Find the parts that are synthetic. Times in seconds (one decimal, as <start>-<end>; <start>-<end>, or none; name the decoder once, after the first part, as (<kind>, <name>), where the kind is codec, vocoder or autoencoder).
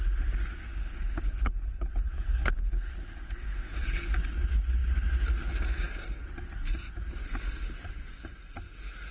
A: 0.8-4.0 (codec, HILCodec)